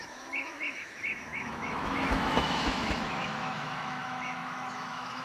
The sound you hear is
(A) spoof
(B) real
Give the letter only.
A